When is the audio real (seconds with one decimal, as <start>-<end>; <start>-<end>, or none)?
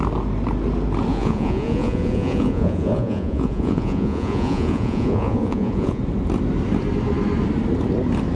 0.0-1.1; 6.0-8.4